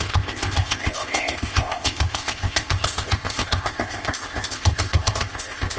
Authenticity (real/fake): fake